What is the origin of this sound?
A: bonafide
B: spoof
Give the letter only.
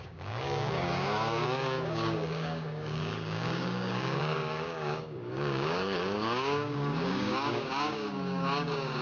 B